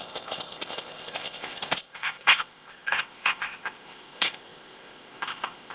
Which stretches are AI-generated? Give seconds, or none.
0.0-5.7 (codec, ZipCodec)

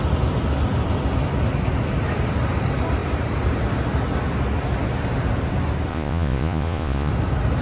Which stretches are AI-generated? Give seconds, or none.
5.9-7.1 (vocoder, Vocos)

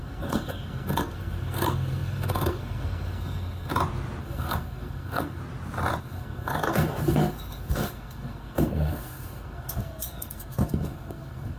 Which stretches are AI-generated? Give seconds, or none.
0.0-3.7 (codec, SNAC); 4.2-5.4; 6.0-11.6

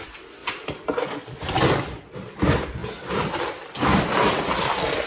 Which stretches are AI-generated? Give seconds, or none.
0.0-5.1 (vocoder, BigVGAN v2)

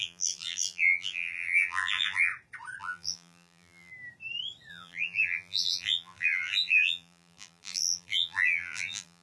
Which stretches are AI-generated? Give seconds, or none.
0.0-2.3 (vocoder, BigVGAN v2); 2.8-3.9; 4.7-9.2